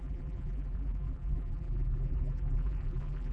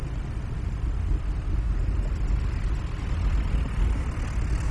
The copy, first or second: first